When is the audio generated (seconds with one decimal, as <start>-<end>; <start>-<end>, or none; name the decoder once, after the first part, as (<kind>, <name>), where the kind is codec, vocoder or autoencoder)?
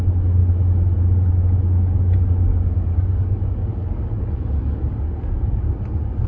2.5-5.3 (codec, DAC)